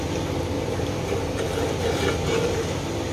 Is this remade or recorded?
recorded